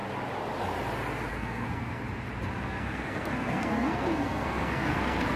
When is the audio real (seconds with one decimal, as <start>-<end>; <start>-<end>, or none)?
0.0-1.3; 2.0-2.6